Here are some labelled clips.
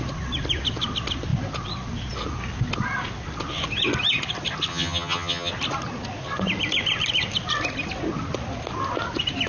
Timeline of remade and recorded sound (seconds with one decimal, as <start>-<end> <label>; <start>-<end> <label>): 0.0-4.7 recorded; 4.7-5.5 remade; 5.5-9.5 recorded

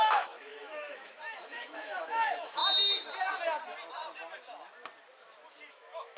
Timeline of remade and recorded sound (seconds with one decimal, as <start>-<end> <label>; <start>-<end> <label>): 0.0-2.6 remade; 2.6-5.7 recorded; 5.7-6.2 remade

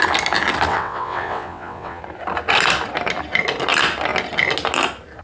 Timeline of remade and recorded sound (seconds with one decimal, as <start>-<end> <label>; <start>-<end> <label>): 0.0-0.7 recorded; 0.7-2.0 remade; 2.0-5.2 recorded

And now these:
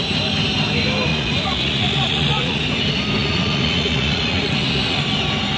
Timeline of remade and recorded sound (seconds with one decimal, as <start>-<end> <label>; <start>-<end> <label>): 0.0-1.1 recorded; 1.1-2.6 remade; 2.6-3.2 recorded; 3.2-5.0 remade; 5.0-5.6 recorded